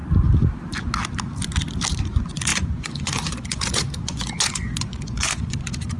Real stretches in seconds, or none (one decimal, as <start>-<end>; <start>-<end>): 0.0-2.0